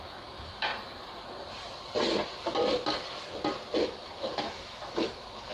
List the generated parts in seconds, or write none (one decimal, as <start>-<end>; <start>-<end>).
0.0-0.7; 3.8-5.5